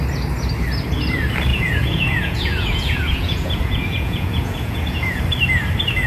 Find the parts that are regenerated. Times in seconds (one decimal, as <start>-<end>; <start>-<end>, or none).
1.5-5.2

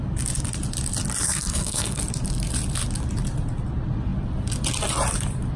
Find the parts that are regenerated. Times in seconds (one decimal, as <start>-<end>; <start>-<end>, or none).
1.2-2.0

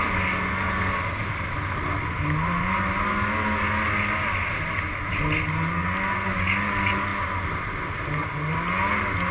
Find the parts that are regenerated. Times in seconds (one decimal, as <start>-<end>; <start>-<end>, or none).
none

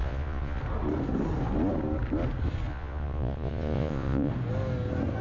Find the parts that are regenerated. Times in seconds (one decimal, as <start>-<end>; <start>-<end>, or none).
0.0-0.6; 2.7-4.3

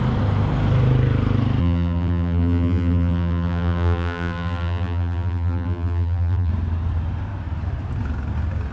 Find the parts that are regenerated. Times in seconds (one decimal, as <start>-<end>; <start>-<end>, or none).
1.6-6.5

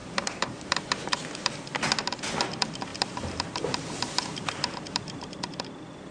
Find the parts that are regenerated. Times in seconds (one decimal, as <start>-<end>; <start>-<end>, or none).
0.0-1.5; 2.9-6.1

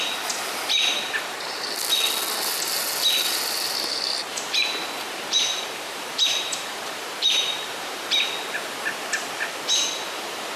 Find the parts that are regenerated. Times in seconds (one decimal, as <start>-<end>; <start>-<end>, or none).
4.3-8.1